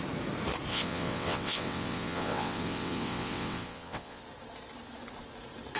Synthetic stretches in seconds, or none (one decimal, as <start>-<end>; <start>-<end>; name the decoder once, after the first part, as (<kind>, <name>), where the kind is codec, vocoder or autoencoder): 0.7-4.2 (vocoder, WaveNeXt)